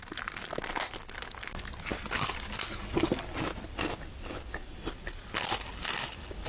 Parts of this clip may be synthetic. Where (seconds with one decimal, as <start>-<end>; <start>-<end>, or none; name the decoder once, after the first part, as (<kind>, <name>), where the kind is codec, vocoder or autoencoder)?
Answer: none